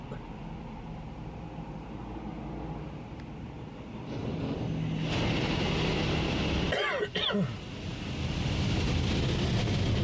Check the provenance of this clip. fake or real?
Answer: real